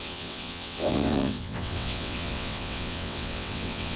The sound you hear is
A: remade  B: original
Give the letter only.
A